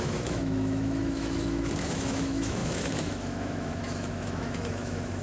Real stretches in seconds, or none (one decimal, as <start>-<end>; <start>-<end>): none